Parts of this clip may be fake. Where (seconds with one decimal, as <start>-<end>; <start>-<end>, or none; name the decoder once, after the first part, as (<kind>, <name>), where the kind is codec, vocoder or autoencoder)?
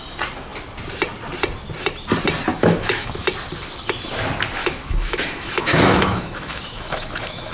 2.5-3.2 (autoencoder, DAC-VAE); 4.6-7.5